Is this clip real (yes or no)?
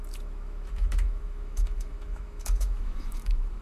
no